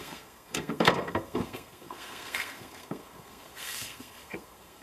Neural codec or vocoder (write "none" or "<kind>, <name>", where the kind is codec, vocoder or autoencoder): codec, SNAC